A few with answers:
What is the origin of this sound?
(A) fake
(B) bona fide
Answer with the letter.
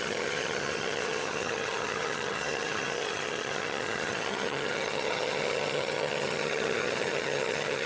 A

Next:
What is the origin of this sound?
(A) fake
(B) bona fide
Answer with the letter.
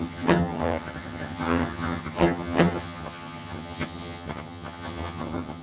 A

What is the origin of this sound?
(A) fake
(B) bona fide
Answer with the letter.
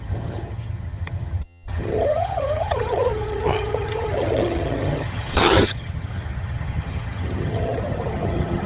A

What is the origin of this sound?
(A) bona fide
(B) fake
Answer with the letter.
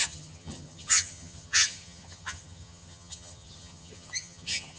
B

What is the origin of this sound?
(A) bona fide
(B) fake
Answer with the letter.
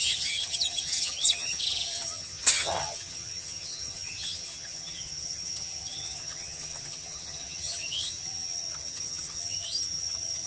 B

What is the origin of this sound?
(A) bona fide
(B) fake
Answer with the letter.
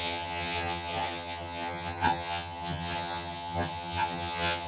B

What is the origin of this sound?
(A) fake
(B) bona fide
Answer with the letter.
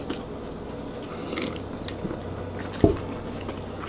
B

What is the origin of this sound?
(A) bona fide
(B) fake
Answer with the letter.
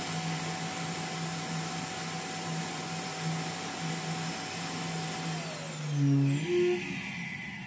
A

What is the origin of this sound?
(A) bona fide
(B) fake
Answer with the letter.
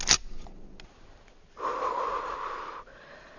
A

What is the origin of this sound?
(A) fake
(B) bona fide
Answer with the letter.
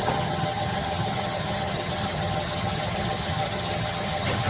A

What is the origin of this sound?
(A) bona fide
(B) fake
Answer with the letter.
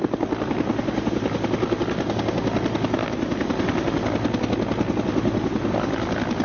A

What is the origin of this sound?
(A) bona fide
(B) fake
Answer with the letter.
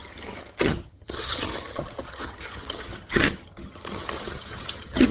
B